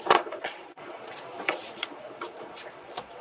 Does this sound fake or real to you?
fake